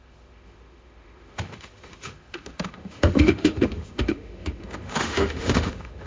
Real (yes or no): no